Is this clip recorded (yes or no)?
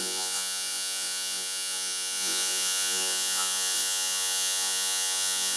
no